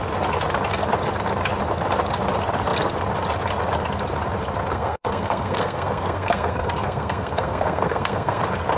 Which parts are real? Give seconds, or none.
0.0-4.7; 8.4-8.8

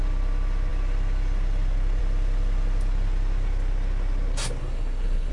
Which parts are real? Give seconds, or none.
0.0-4.6